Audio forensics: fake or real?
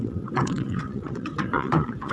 fake